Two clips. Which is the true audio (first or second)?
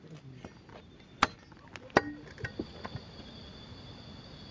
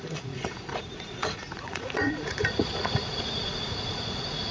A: first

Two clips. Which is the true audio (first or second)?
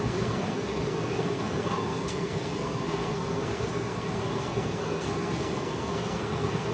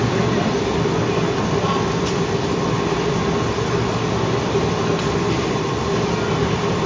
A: second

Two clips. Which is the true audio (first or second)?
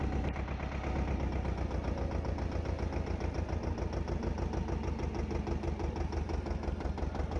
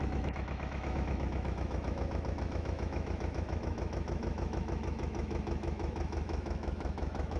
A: first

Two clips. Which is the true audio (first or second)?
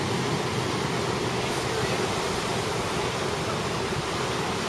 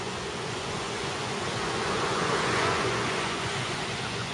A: first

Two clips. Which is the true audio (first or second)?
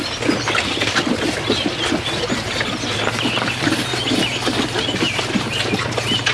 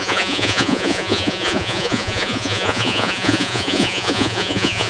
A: first